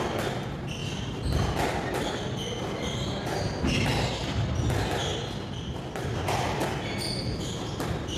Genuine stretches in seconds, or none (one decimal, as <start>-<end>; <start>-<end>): 0.0-8.2